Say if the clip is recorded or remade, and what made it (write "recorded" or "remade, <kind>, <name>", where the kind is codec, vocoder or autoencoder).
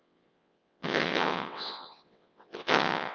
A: remade, vocoder, WaveNeXt